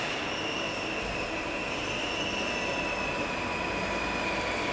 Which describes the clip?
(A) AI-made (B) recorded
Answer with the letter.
B